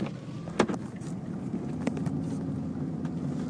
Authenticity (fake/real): real